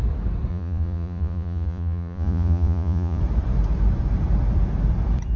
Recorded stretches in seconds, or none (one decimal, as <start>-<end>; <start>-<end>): 0.0-0.5; 3.2-5.4